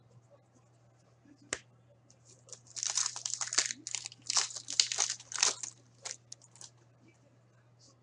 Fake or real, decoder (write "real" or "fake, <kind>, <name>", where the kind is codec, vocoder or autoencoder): real